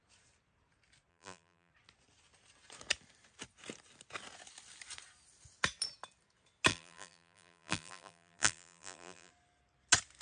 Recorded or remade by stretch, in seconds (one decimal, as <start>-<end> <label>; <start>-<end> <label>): 0.0-1.1 recorded; 1.1-1.7 remade; 1.7-6.7 recorded; 6.7-9.3 remade; 9.3-10.2 recorded